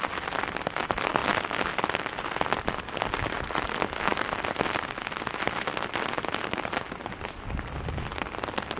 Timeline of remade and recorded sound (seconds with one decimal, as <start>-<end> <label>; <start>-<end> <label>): 0.0-8.8 recorded